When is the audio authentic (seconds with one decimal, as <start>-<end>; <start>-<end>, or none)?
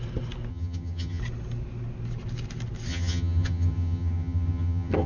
0.0-0.5; 1.2-2.9